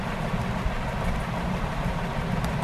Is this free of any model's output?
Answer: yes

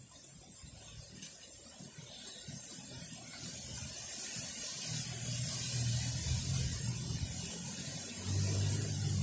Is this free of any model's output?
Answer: yes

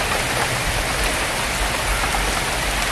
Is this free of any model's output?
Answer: yes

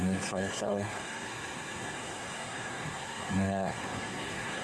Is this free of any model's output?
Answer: no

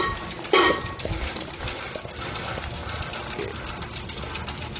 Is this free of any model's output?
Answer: yes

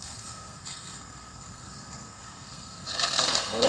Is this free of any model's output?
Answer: no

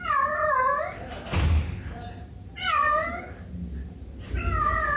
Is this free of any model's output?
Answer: yes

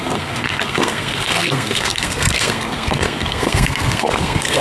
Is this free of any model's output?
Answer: no